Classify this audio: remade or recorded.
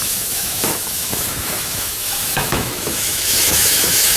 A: remade